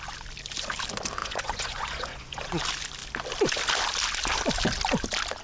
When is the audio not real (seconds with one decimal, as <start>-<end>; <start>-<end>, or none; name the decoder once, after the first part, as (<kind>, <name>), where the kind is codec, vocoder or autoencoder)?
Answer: 1.2-2.6 (vocoder, Vocos)